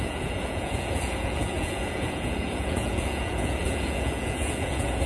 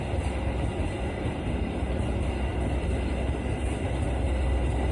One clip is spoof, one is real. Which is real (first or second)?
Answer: second